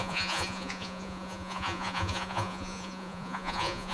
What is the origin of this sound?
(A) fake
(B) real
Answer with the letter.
A